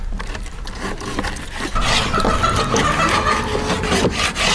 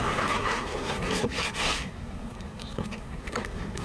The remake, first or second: second